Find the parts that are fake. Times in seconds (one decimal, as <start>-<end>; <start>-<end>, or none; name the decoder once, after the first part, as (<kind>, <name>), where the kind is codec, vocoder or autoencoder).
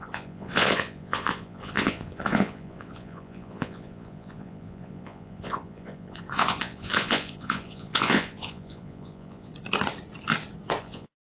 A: 0.0-9.5 (vocoder, Vocos); 10.8-11.3